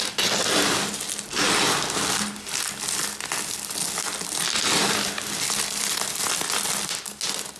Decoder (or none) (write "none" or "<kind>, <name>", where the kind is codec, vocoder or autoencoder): none